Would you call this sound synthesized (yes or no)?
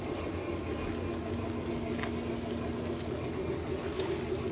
no